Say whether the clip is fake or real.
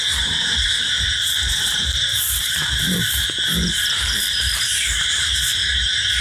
fake